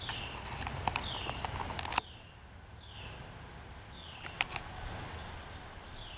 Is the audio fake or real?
real